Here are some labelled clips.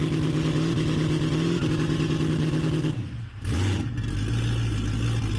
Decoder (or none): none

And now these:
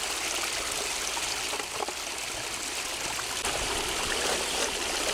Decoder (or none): none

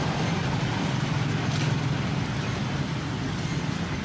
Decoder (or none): none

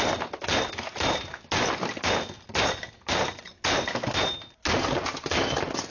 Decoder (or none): none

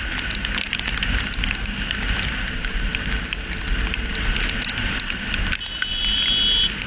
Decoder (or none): none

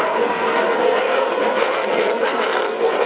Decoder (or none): codec, SNAC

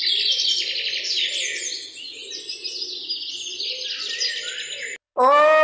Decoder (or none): none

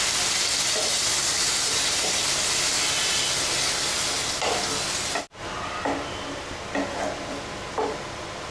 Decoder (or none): none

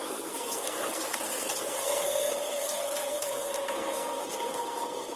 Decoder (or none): codec, SNAC